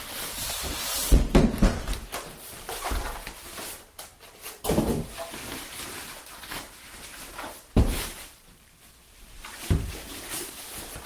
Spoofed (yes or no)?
yes